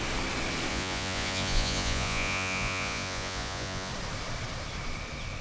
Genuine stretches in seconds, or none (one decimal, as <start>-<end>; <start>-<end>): 0.0-0.7; 3.9-5.4